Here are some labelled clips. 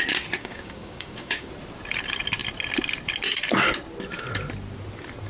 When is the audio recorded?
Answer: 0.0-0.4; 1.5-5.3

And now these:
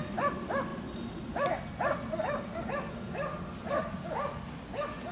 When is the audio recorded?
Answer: 0.0-5.1

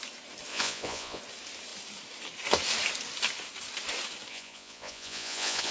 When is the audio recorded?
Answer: 0.0-0.5; 1.2-4.3

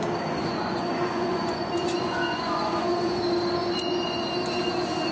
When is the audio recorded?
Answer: 0.0-0.4; 3.2-3.6; 4.3-5.1

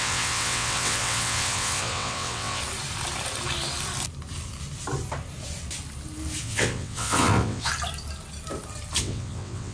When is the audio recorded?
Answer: 2.6-6.4; 7.7-9.0

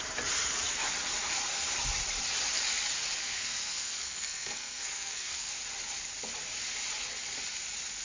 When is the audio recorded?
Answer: 0.0-3.2; 5.5-8.0